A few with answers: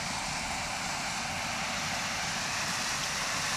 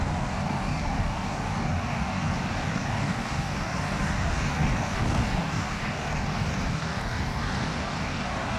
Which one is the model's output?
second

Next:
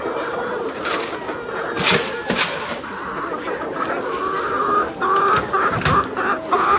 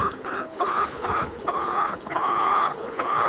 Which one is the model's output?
second